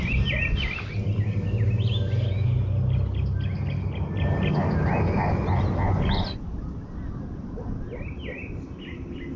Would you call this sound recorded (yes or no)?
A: yes